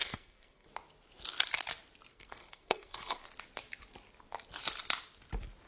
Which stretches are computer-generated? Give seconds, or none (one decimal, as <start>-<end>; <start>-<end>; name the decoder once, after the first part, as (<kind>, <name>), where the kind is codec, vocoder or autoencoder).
0.0-0.7 (codec, SNAC); 2.1-3.2